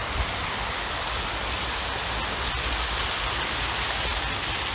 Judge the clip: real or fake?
real